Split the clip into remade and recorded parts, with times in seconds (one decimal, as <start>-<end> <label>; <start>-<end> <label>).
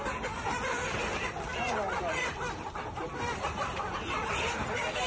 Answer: 0.0-1.5 recorded; 1.5-3.8 remade; 3.8-5.1 recorded